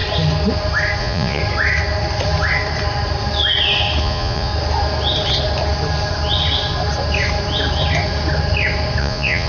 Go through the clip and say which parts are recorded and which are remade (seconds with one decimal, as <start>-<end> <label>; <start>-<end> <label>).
0.0-1.0 recorded; 1.0-1.4 remade; 1.4-4.0 recorded; 4.0-4.5 remade; 4.5-9.0 recorded; 9.0-9.5 remade